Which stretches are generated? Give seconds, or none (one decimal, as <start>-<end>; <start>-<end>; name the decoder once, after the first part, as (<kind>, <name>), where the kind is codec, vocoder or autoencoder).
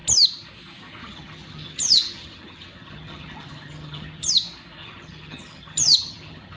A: 1.0-4.3 (vocoder, HiFi-GAN); 4.8-6.6